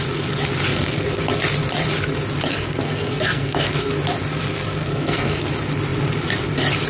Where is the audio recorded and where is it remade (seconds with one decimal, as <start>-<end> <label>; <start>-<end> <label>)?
0.0-0.7 recorded; 0.7-1.2 remade; 1.2-2.5 recorded; 2.5-3.9 remade; 3.9-4.8 recorded; 4.8-5.5 remade; 5.5-6.9 recorded